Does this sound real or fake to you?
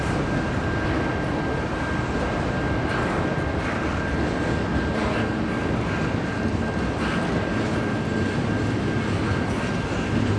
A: real